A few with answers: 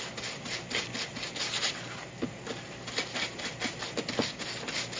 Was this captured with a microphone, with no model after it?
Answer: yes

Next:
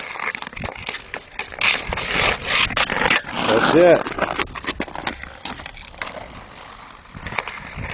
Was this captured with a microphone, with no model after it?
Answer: yes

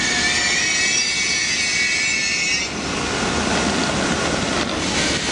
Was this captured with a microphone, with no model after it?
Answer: yes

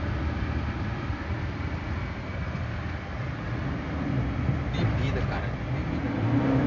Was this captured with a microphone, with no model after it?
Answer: yes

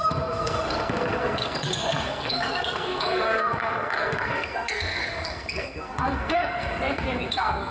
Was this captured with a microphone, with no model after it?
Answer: no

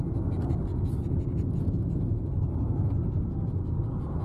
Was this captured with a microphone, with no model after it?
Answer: yes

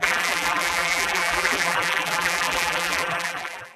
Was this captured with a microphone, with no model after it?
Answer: no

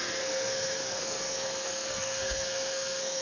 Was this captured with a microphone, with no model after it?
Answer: no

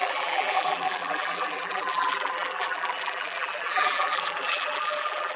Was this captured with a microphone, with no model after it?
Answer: no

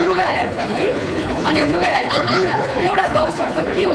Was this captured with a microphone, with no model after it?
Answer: no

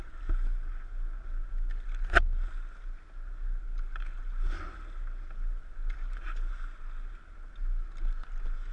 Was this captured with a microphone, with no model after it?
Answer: yes